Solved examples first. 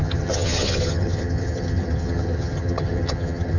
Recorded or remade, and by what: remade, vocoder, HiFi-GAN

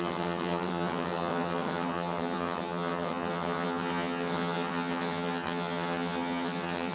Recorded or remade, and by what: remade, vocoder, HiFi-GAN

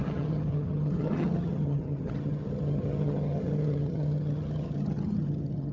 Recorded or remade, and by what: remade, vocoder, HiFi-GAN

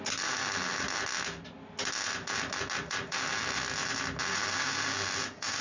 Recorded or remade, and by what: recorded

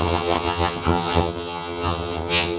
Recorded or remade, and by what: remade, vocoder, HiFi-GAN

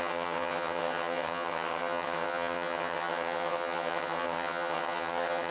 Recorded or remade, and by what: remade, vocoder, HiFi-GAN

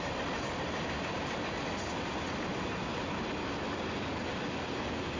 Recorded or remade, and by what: recorded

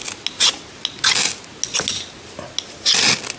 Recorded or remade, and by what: recorded